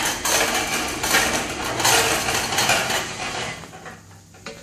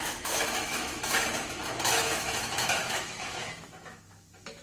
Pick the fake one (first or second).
second